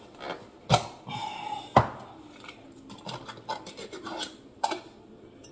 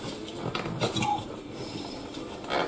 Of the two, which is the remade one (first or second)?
second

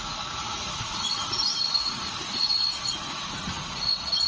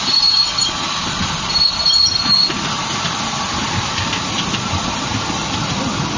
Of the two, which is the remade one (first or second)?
first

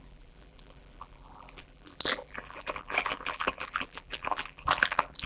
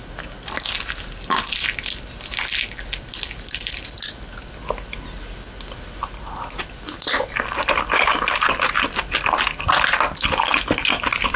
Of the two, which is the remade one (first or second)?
first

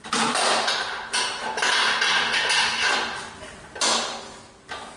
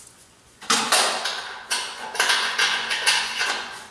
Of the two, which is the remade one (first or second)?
second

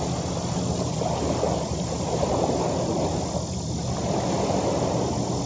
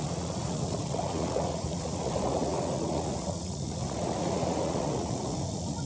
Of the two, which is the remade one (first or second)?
second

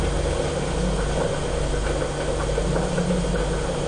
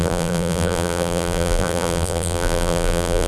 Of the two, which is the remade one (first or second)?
second